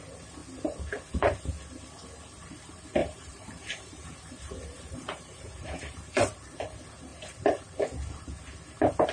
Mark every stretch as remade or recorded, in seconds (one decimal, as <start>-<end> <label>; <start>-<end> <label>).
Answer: 0.0-3.0 recorded; 3.0-6.2 remade; 6.2-9.1 recorded